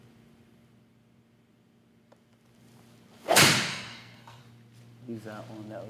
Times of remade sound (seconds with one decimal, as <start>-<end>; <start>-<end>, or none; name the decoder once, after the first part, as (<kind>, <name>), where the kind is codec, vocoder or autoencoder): 3.7-4.4 (codec, SNAC)